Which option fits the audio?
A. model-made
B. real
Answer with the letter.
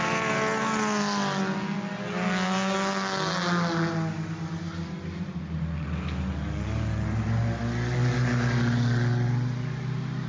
B